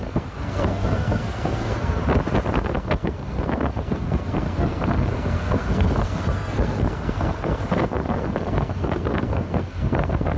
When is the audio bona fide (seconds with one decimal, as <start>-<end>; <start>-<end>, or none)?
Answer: 2.0-2.5